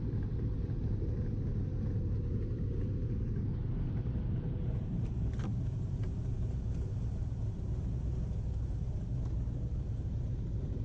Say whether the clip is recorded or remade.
remade